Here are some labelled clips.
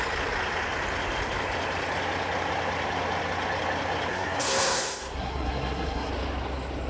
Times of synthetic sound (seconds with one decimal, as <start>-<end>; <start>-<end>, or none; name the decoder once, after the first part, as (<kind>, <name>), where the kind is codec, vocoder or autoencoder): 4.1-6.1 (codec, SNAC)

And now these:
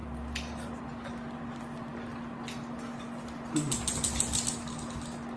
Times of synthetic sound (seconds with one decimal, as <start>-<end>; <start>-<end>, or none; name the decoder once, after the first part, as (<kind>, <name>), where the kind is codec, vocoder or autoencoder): none

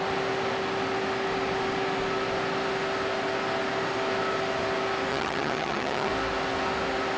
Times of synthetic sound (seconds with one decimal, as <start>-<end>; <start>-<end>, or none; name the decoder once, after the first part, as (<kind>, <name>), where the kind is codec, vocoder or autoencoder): 5.1-6.1 (vocoder, HiFi-GAN)

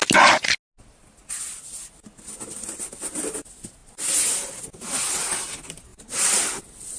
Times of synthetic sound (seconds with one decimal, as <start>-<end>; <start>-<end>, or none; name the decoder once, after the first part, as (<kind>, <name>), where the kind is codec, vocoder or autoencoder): none

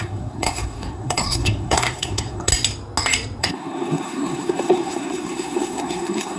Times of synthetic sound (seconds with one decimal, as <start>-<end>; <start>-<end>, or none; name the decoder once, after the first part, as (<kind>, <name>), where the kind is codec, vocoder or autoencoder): 0.0-2.5 (codec, SNAC); 3.4-6.4

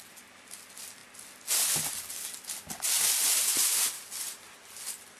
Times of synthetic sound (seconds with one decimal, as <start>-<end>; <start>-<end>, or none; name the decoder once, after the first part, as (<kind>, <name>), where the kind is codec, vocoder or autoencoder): none

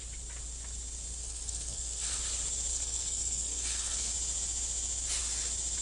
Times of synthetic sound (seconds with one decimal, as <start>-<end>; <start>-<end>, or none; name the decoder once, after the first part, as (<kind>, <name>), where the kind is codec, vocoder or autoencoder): 1.2-2.2 (codec, SNAC); 2.7-4.1